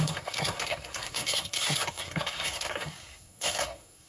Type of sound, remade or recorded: remade